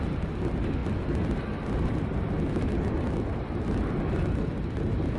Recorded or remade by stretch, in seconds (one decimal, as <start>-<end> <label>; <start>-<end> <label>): 0.0-5.2 recorded